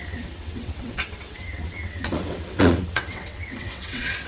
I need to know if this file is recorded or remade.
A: remade